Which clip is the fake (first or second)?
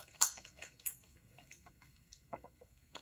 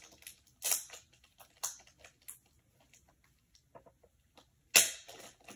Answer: first